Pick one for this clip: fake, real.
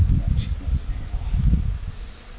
real